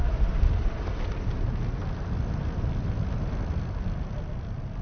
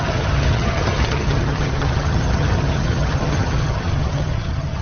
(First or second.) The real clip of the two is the first